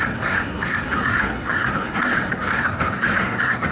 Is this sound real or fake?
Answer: fake